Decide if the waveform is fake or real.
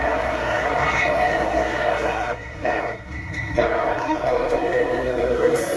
fake